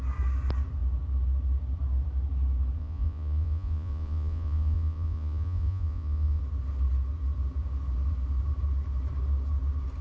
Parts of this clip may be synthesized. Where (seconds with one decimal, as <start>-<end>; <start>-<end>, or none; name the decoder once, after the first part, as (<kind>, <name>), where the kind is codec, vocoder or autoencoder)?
2.8-6.4 (vocoder, Vocos)